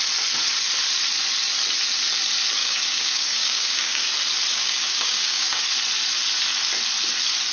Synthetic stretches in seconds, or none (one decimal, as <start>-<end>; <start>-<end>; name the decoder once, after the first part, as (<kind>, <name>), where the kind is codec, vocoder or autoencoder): 2.6-4.1 (codec, DAC); 4.5-5.6